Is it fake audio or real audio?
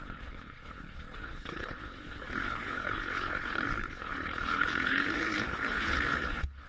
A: fake